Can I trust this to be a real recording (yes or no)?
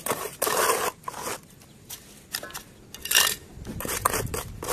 yes